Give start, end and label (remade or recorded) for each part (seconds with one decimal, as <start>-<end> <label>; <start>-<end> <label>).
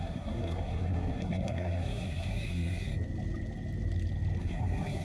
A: 0.0-2.9 remade; 2.9-4.4 recorded; 4.4-5.0 remade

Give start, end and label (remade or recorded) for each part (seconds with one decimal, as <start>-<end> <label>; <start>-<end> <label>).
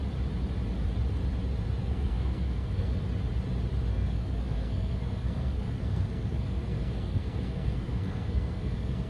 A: 0.0-1.8 recorded; 1.8-3.0 remade; 3.0-3.9 recorded; 3.9-9.1 remade